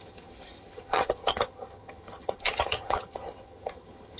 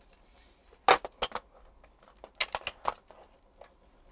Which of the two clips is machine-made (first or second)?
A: first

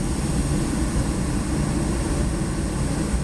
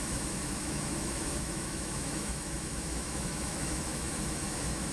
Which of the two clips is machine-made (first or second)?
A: second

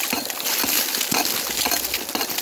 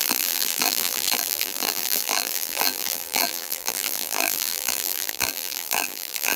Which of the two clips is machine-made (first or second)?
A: second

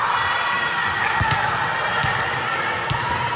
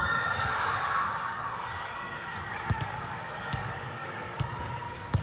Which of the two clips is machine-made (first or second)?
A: second